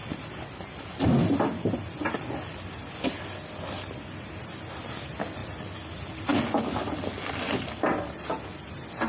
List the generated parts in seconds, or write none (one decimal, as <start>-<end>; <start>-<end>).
none